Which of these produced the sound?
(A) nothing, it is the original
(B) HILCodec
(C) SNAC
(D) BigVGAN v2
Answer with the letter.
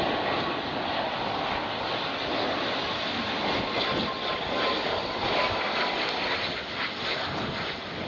A